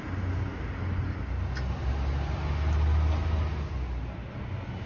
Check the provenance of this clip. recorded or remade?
recorded